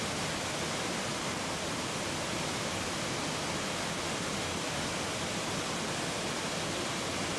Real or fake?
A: real